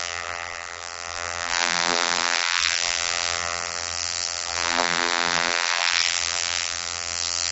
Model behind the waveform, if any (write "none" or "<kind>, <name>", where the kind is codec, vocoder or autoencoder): vocoder, BigVGAN v2